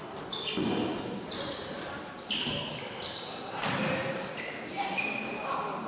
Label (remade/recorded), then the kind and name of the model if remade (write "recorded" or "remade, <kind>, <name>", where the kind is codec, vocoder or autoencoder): recorded